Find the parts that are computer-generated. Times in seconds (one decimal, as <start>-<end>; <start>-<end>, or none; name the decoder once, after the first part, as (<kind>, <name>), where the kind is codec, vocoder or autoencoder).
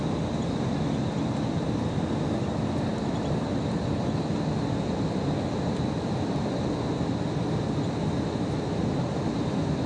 none